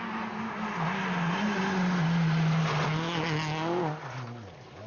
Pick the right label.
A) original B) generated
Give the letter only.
A